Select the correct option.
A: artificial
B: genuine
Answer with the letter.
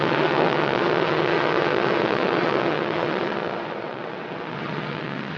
A